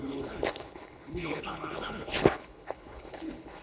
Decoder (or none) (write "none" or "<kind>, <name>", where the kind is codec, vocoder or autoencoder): codec, HILCodec